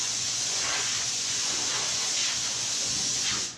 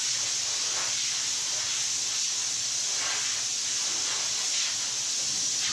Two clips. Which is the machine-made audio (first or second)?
first